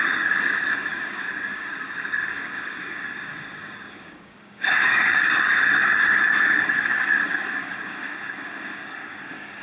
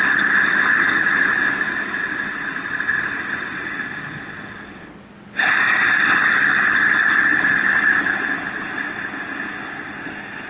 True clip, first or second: second